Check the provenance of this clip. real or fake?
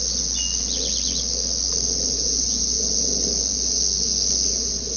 real